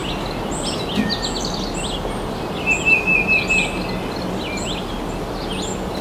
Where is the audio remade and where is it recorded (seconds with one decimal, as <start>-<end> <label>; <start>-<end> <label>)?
0.0-6.0 recorded